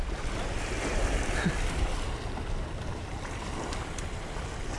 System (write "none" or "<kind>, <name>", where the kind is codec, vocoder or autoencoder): none